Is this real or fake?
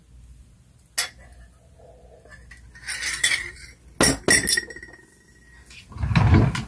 real